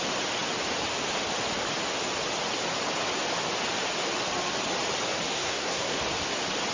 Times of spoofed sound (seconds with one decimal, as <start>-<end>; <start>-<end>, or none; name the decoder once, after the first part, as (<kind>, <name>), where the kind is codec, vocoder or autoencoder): 5.3-6.0 (codec, SNAC)